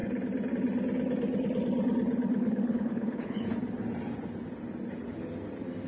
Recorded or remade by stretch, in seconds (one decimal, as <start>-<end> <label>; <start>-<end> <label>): 0.0-2.3 recorded; 2.3-3.4 remade; 3.4-5.9 recorded